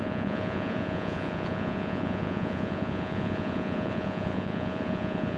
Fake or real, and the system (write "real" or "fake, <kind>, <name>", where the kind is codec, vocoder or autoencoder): fake, vocoder, Vocos